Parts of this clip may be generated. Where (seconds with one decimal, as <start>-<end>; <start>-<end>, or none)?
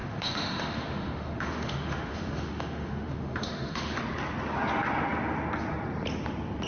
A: 0.0-4.0